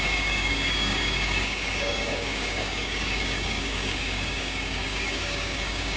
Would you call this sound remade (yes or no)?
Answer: yes